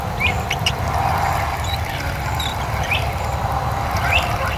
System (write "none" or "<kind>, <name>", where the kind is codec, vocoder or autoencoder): none